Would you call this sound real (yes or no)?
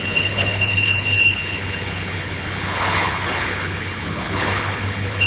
no